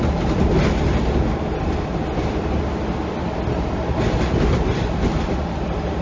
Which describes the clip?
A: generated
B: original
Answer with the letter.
B